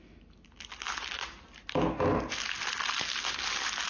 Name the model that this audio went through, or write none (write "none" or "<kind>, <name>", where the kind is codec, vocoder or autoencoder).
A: none